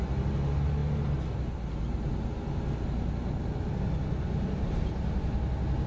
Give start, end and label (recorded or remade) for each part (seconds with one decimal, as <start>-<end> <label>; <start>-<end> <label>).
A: 0.0-5.9 recorded